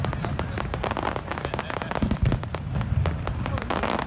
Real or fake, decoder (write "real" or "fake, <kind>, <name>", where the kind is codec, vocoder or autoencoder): real